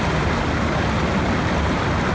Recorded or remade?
recorded